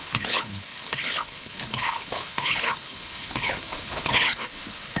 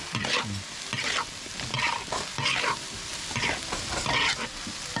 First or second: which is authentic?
second